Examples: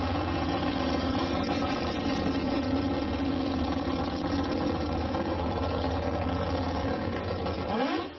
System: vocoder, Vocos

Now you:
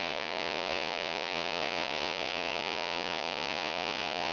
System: vocoder, Vocos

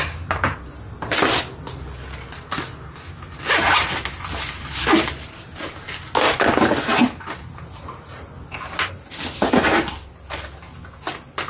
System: none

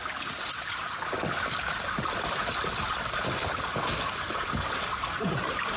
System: none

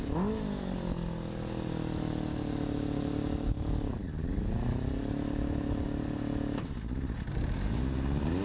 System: none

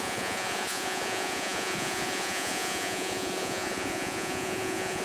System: vocoder, Vocos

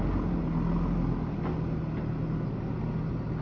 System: none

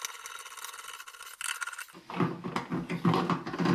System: none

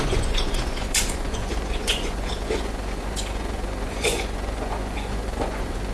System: vocoder, Vocos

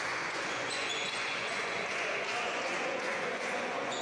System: vocoder, Vocos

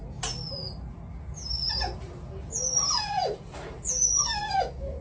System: none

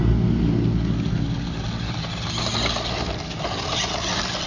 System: none